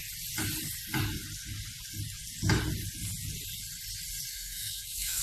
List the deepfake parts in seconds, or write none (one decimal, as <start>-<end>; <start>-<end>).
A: 4.3-5.2

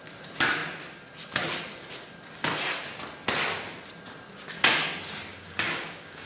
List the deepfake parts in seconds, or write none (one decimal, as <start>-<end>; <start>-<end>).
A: 5.3-6.3